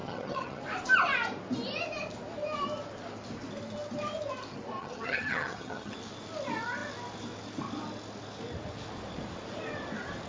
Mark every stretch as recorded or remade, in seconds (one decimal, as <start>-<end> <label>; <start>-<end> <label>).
0.0-0.6 remade; 0.6-4.8 recorded; 4.8-5.9 remade; 5.9-10.3 recorded